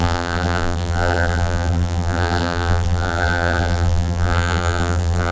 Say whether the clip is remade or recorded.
remade